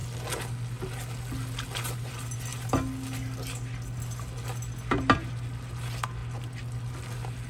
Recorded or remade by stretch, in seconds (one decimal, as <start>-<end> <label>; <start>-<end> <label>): 0.0-7.5 recorded